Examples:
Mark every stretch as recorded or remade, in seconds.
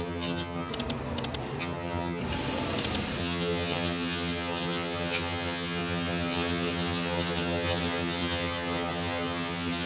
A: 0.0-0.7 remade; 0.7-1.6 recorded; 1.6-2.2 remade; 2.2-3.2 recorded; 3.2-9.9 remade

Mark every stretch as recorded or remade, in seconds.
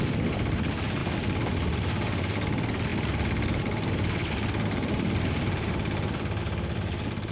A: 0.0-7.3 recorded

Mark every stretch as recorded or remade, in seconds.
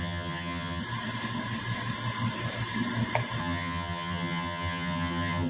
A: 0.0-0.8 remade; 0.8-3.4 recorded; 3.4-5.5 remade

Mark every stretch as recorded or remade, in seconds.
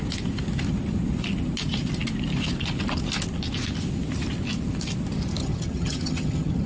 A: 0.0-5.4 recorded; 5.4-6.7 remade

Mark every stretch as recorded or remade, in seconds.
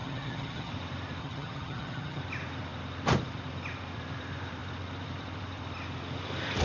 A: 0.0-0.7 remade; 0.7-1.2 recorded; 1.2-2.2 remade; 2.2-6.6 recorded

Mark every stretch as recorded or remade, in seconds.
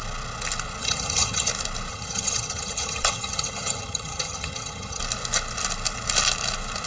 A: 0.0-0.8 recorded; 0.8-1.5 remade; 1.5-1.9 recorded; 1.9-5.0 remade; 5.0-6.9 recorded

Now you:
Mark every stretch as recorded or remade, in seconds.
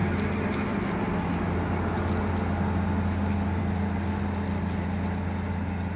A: 0.0-6.0 recorded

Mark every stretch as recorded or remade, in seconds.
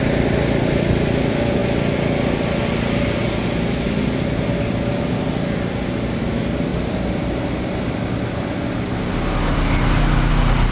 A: 0.0-10.7 recorded